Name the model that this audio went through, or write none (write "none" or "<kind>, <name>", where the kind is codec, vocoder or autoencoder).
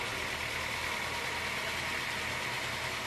none